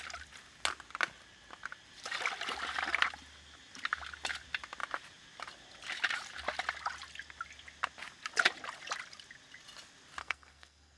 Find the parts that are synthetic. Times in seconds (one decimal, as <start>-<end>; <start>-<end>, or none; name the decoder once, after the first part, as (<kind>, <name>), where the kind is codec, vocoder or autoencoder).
10.2-11.0 (codec, SNAC)